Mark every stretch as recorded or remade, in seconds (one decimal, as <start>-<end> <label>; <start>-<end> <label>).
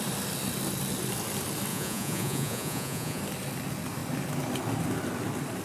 0.0-1.7 recorded; 1.7-3.2 remade; 3.2-5.6 recorded